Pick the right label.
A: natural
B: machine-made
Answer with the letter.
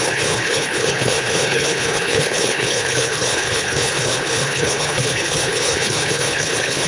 B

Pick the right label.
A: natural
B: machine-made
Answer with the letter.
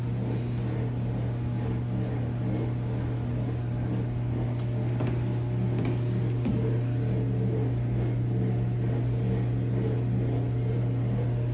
A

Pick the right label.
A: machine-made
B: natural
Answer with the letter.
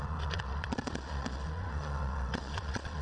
A